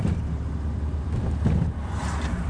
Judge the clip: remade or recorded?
recorded